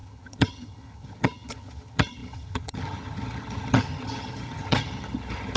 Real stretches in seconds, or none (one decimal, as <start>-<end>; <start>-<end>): none